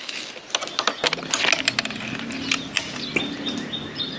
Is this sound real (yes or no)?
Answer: yes